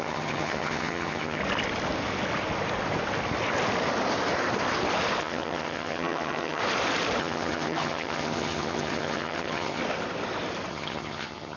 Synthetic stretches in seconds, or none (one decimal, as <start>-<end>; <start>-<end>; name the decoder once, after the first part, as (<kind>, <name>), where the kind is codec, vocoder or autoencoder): 0.0-1.4 (vocoder, HiFi-GAN); 5.2-6.6; 7.2-9.8; 10.7-11.6